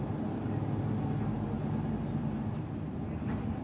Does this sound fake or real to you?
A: real